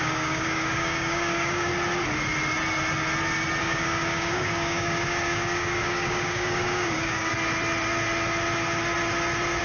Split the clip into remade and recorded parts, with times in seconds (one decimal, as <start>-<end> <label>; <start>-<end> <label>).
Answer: 0.0-1.7 remade; 1.7-3.6 recorded; 3.6-7.3 remade; 7.3-9.6 recorded